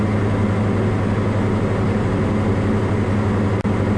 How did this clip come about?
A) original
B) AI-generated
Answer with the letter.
A